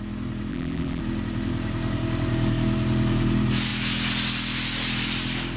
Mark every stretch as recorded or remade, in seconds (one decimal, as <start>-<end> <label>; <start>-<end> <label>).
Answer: 0.0-0.5 recorded; 0.5-1.0 remade; 1.0-5.6 recorded